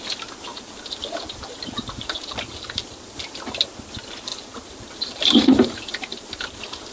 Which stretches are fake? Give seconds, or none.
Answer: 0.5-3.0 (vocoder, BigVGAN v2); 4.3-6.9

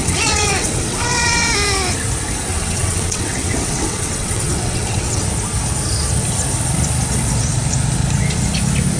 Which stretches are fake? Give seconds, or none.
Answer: 0.0-1.5 (vocoder, WaveNeXt); 2.5-5.2